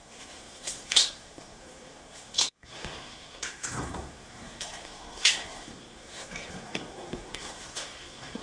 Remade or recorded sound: remade